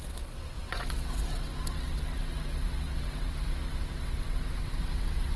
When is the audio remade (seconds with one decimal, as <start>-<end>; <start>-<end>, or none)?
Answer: 0.0-5.4

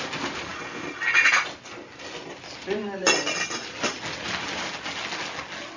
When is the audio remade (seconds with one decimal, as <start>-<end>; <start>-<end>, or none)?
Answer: none

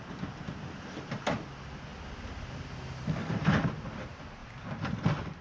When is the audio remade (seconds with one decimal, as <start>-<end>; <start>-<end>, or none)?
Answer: 3.2-3.7; 4.4-4.9

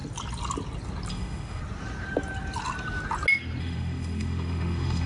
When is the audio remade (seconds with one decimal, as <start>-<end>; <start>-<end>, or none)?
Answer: 1.1-1.6; 3.6-5.1

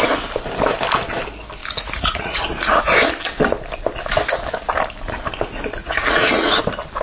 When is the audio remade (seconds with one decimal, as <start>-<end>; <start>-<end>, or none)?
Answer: 1.6-2.8; 5.8-6.6